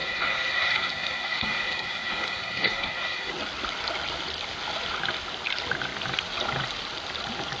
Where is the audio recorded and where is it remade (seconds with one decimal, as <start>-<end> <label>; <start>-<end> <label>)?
0.0-3.3 remade; 3.3-7.6 recorded